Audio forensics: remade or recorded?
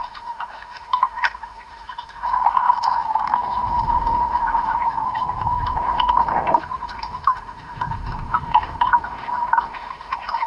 remade